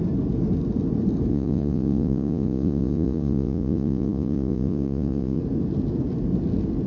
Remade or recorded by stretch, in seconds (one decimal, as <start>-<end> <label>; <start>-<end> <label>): 0.0-1.3 recorded; 1.3-5.4 remade; 5.4-6.9 recorded